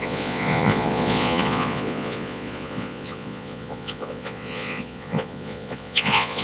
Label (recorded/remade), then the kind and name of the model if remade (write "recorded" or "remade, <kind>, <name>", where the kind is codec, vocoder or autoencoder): remade, vocoder, Vocos